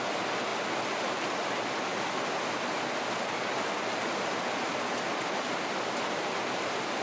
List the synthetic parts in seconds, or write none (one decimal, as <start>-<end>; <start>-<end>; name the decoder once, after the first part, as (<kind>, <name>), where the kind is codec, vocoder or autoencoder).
0.5-1.4 (vocoder, BigVGAN v2)